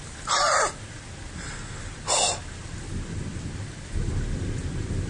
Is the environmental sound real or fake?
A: real